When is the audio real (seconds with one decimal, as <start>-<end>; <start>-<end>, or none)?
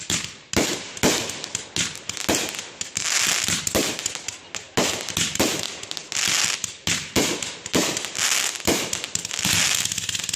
0.0-10.4